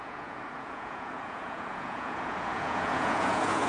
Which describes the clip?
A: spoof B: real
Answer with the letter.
A